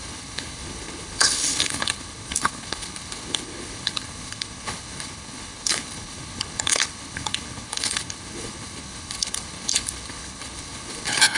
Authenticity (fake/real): fake